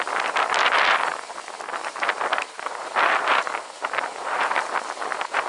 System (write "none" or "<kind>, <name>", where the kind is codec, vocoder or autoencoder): none